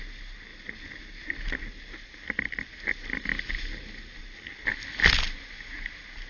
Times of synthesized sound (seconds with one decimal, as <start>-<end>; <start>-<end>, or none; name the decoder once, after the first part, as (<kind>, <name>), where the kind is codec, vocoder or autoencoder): none